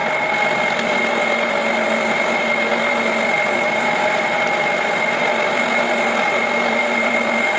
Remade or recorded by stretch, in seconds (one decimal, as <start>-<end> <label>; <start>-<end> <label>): 0.0-7.6 recorded